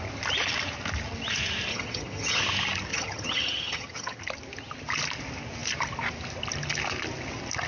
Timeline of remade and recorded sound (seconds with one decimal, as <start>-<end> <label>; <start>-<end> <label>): 0.0-1.7 recorded; 1.7-2.4 remade; 2.4-2.9 recorded; 2.9-4.2 remade; 4.2-7.7 recorded

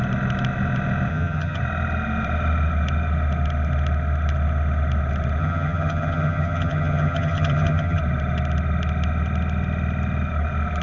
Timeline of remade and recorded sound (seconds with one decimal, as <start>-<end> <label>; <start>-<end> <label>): 0.0-1.1 recorded; 1.1-1.6 remade; 1.6-5.4 recorded; 5.4-8.0 remade; 8.0-10.8 recorded

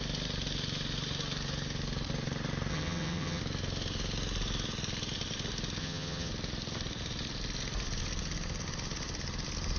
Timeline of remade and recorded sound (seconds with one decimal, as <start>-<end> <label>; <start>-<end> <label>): 0.0-2.7 recorded; 2.7-3.4 remade; 3.4-5.8 recorded; 5.8-6.3 remade; 6.3-9.8 recorded

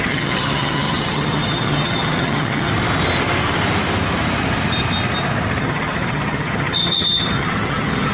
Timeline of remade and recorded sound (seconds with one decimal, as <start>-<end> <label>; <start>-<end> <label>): 0.0-2.7 remade; 2.7-5.6 recorded; 5.6-8.1 remade